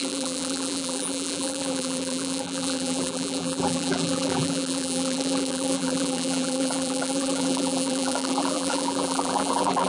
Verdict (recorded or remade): remade